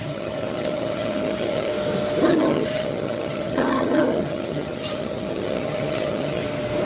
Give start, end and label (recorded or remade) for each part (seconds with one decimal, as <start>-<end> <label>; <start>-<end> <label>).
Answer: 0.0-1.7 remade; 1.7-2.3 recorded; 2.3-6.4 remade; 6.4-6.9 recorded